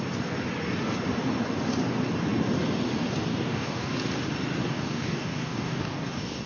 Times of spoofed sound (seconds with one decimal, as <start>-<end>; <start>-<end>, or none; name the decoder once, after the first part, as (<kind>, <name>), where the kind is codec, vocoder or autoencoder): 3.3-3.9 (codec, DAC); 4.6-6.5